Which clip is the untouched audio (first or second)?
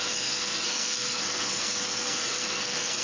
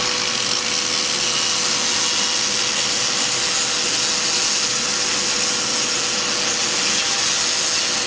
second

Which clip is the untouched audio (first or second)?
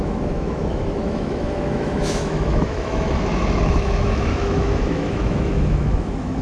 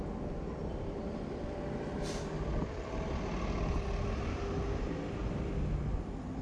second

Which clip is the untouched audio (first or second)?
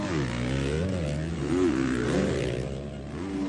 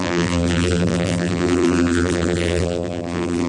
first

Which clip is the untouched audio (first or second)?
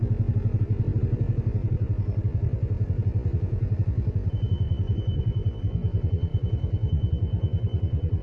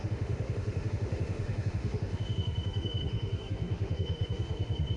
first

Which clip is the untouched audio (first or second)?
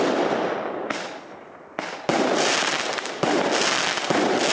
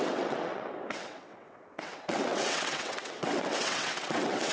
first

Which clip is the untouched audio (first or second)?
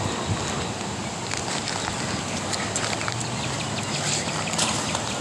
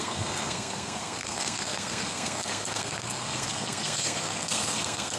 first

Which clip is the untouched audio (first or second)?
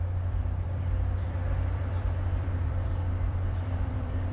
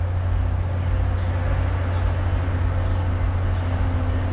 second